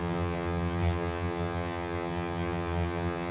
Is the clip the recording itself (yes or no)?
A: no